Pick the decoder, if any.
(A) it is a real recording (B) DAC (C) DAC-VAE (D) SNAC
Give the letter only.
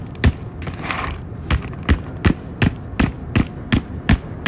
A